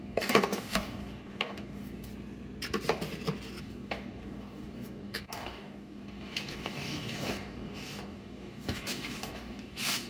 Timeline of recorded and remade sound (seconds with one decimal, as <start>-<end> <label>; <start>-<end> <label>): 0.0-2.1 remade; 2.1-3.6 recorded; 3.6-10.1 remade

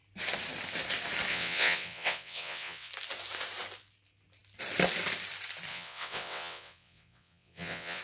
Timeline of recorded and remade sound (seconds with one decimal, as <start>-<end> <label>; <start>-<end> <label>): 0.0-1.3 recorded; 1.3-2.9 remade; 2.9-5.7 recorded; 5.7-8.0 remade

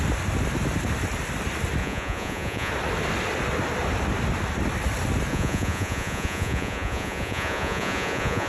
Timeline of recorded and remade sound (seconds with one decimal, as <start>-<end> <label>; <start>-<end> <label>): 0.0-1.8 recorded; 1.8-2.7 remade; 2.7-5.3 recorded; 5.3-8.5 remade